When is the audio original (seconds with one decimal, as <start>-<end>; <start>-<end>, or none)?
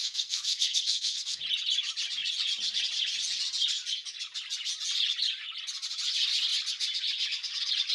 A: 1.4-7.9